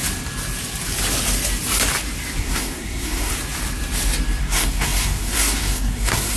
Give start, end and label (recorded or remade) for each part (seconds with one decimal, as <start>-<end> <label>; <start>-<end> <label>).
0.0-2.4 recorded; 2.4-3.3 remade; 3.3-4.4 recorded; 4.4-6.4 remade